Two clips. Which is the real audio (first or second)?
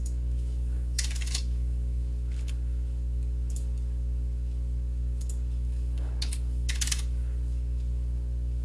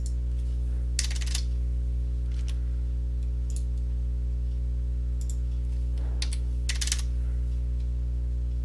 second